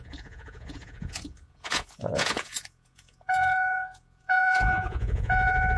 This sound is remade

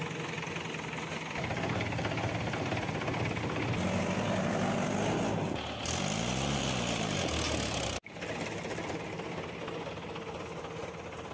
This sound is recorded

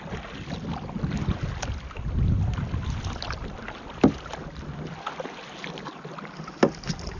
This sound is recorded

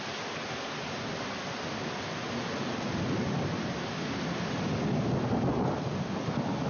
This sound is recorded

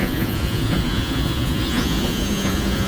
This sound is remade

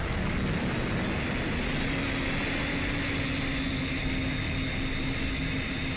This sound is recorded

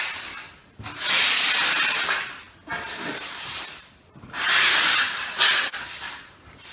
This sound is recorded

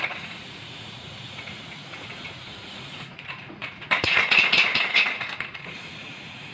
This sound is remade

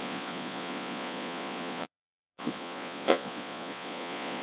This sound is remade